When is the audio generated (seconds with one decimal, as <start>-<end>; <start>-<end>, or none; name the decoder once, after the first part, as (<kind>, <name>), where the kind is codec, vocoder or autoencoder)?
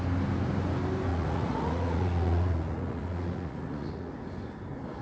1.1-4.1 (vocoder, Vocos)